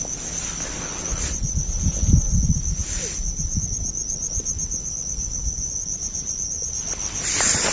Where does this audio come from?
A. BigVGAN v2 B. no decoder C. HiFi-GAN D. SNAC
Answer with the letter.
B